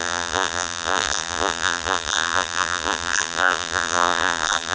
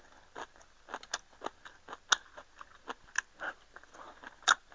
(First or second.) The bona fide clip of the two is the second